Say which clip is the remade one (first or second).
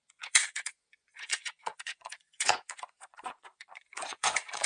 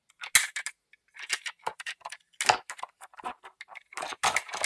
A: first